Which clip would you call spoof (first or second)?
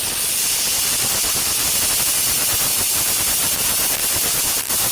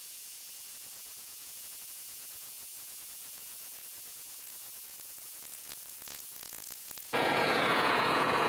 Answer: second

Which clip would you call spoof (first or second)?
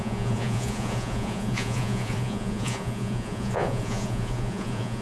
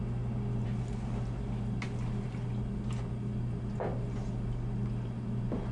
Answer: first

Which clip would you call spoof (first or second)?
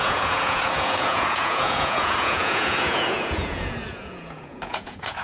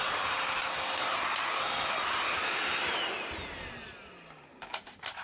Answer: first